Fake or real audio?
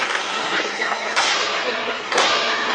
fake